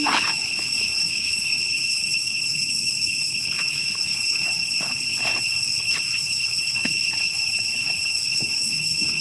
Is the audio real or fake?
fake